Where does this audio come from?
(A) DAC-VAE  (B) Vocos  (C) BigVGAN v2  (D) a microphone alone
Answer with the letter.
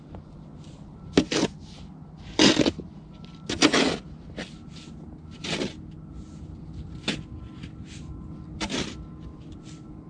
D